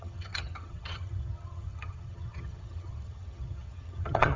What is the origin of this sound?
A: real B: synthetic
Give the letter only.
B